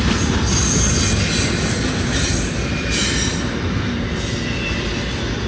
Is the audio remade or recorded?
recorded